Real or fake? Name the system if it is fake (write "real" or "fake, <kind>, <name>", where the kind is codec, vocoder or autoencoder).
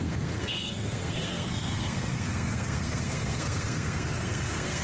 fake, codec, SNAC